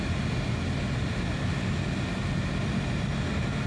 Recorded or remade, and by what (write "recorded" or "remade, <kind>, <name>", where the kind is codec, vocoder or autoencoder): recorded